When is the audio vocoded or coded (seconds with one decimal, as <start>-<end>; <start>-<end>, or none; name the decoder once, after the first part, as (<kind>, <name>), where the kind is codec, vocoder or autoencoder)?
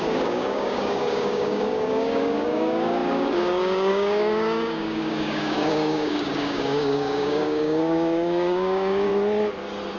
0.0-9.1 (codec, DAC)